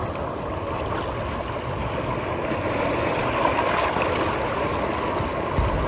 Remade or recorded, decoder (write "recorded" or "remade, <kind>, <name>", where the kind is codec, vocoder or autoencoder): recorded